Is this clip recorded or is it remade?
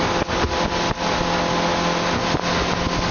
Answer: recorded